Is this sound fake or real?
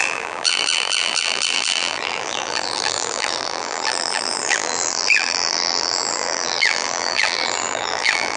fake